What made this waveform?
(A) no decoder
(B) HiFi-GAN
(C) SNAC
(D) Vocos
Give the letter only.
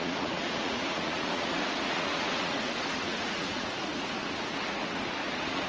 D